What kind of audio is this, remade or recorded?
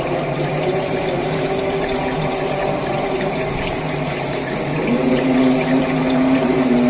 remade